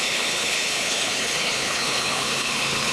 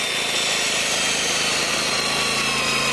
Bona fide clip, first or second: second